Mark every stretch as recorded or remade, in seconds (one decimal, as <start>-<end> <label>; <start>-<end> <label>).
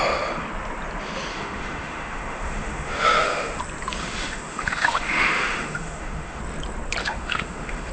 0.0-1.3 recorded; 1.3-3.6 remade; 3.6-4.0 recorded; 4.0-6.4 remade; 6.4-7.0 recorded; 7.0-7.9 remade